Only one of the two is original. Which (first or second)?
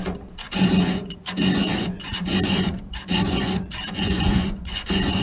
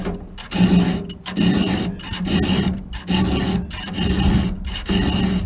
second